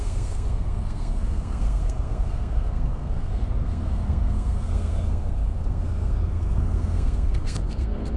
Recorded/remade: remade